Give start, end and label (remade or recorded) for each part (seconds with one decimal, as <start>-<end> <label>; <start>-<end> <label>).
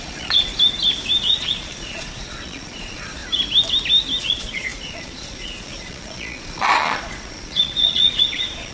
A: 0.0-0.5 remade; 0.5-1.2 recorded; 1.2-3.2 remade; 3.2-4.2 recorded; 4.2-8.7 remade